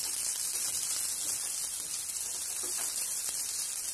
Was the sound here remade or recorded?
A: recorded